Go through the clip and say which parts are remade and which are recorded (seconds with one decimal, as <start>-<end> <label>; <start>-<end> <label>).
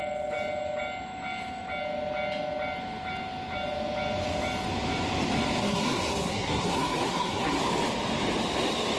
0.0-5.6 recorded; 5.6-7.6 remade; 7.6-9.0 recorded